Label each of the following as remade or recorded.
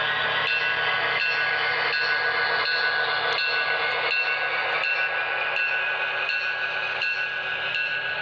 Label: recorded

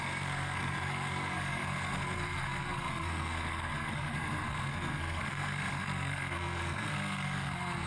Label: remade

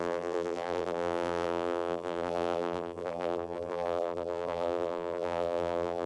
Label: remade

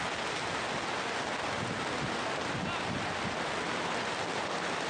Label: remade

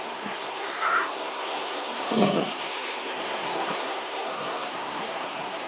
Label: remade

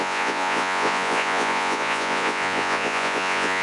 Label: remade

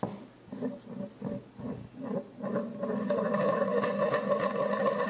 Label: recorded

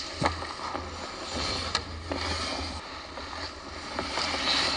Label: recorded